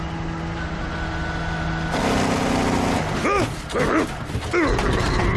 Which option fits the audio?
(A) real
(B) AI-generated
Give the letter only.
A